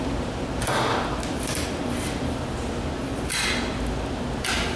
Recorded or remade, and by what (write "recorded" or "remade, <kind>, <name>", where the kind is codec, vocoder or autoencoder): recorded